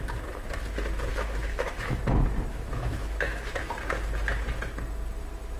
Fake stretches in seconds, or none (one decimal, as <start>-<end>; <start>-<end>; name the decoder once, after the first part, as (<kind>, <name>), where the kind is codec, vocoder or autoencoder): 1.1-2.0 (autoencoder, DAC-VAE); 2.5-3.7